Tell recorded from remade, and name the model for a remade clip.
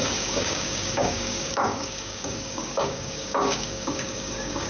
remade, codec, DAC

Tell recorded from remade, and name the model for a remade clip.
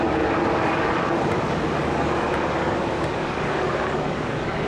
remade, codec, DAC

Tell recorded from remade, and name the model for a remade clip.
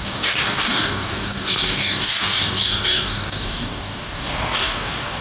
remade, codec, DAC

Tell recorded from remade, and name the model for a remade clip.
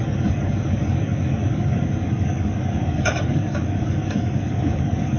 remade, codec, DAC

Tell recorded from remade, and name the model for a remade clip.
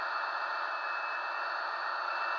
recorded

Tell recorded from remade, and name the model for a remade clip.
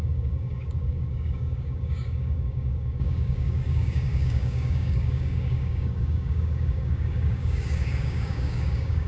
remade, codec, DAC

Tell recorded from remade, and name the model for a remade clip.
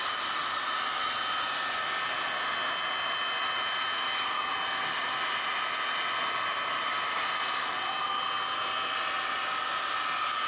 recorded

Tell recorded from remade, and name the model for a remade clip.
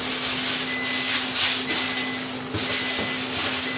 recorded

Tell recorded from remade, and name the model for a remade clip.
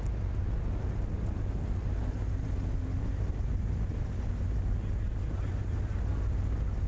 recorded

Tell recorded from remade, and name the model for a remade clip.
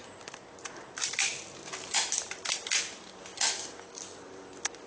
recorded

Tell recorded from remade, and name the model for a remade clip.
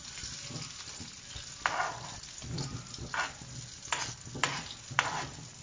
recorded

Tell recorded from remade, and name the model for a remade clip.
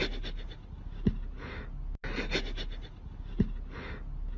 recorded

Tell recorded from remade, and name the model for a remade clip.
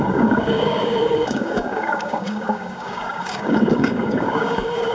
remade, codec, DAC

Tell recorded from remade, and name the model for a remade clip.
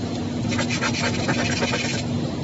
recorded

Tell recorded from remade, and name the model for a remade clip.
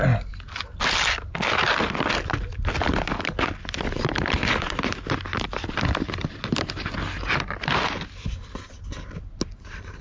recorded